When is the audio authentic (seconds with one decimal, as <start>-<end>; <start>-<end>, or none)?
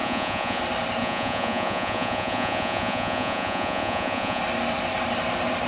0.6-1.0; 4.4-5.7